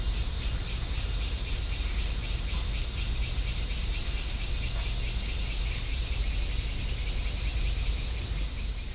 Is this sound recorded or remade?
recorded